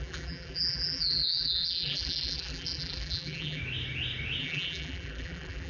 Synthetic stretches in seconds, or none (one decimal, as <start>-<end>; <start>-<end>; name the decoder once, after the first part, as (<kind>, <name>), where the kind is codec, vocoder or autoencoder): 0.0-3.6 (vocoder, BigVGAN v2); 4.4-5.7